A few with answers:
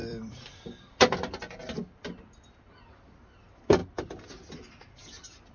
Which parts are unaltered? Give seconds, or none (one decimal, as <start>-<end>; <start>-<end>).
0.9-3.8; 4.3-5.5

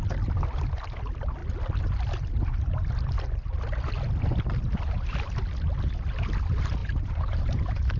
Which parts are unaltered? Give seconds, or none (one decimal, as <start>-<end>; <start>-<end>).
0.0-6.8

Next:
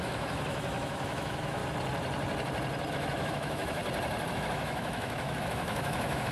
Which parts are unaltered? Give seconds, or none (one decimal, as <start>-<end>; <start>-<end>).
1.6-2.9; 3.8-4.3

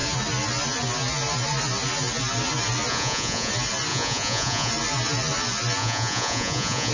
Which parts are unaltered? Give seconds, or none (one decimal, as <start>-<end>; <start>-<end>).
0.0-2.9; 3.5-3.9; 4.7-5.8

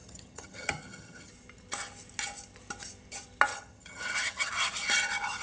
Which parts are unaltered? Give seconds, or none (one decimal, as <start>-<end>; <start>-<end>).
1.3-3.5; 4.5-5.4